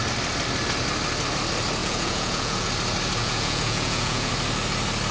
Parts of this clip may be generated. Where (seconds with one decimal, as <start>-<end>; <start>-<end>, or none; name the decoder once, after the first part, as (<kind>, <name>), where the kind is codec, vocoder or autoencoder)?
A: 1.8-2.7 (vocoder, Vocos); 3.2-4.3